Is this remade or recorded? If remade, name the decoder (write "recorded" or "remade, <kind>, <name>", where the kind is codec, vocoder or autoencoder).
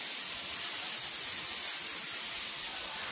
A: recorded